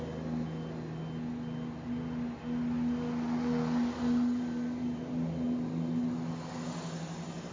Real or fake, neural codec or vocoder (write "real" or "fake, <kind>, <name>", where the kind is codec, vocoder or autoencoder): real